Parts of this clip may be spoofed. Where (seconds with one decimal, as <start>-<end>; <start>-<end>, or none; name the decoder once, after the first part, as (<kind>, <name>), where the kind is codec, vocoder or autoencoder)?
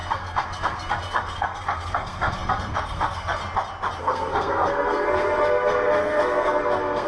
0.0-3.4 (codec, SNAC); 4.0-7.1